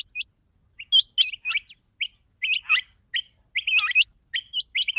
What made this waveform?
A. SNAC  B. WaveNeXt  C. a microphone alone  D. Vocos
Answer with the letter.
C